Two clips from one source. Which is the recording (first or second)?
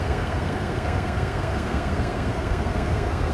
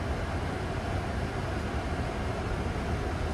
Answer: second